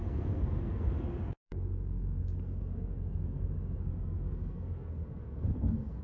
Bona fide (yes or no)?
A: no